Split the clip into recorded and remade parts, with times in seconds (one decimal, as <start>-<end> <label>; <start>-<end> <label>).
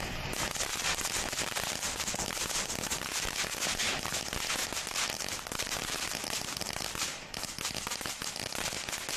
0.0-0.7 recorded; 0.7-4.1 remade; 4.1-4.6 recorded; 4.6-7.4 remade; 7.4-9.2 recorded